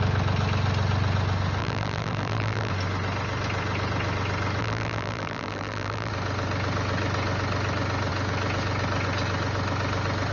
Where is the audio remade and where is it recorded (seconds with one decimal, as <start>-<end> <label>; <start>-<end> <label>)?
0.0-1.6 recorded; 1.6-2.7 remade; 2.7-4.6 recorded; 4.6-6.1 remade; 6.1-10.3 recorded